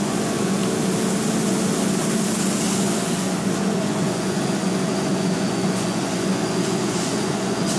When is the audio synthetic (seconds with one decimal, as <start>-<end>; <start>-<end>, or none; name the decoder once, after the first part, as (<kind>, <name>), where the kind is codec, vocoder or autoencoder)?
0.0-0.6 (vocoder, Vocos); 2.8-7.8